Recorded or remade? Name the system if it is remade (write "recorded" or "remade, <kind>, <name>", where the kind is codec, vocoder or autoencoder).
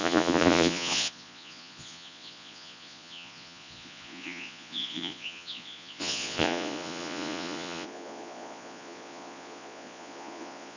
remade, vocoder, Vocos